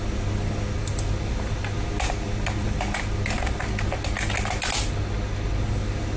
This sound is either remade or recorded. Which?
recorded